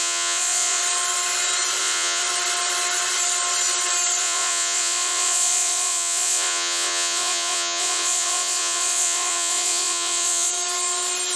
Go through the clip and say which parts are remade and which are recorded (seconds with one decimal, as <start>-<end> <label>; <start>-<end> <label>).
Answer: 0.0-0.8 remade; 0.8-1.8 recorded; 1.8-2.2 remade; 2.2-4.2 recorded; 4.2-10.5 remade; 10.5-11.4 recorded